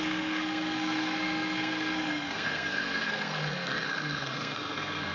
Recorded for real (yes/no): no